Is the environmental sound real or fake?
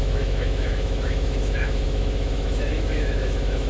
fake